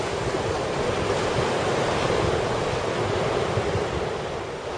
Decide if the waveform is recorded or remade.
recorded